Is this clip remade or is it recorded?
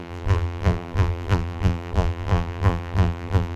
remade